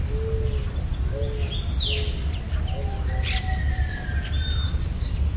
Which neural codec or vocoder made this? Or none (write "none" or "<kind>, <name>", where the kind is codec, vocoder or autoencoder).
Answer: none